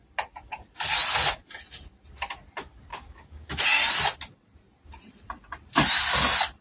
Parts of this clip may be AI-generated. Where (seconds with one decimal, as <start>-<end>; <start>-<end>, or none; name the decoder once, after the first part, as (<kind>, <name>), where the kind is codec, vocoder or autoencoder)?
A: 2.9-3.6 (codec, DAC)